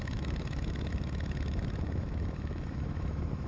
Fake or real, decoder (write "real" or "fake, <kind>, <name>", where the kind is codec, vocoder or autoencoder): fake, autoencoder, DAC-VAE